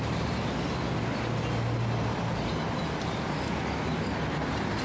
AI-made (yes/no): no